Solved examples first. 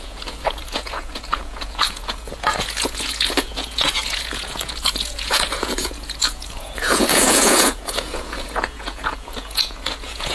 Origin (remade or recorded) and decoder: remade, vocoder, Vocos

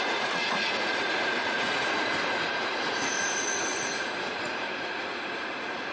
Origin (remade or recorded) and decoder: remade, vocoder, Vocos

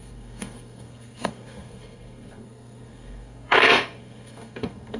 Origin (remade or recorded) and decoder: remade, codec, SNAC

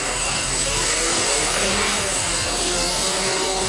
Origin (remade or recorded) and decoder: remade, codec, DAC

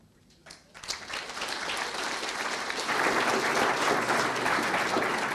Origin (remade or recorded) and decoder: recorded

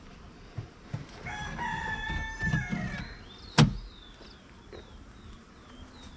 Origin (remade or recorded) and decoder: recorded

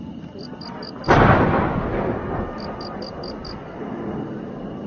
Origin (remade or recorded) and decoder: recorded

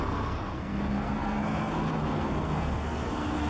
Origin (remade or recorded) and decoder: remade, codec, SNAC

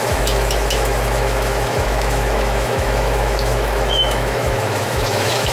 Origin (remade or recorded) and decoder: remade, autoencoder, DAC-VAE